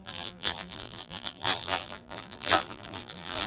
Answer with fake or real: fake